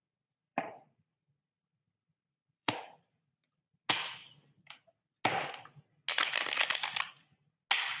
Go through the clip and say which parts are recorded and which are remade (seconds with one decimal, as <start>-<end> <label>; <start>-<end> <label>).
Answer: 0.0-0.5 recorded; 0.5-3.8 remade; 3.8-8.0 recorded